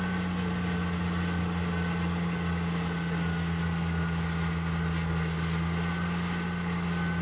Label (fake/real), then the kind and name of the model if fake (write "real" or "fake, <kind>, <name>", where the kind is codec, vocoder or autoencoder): real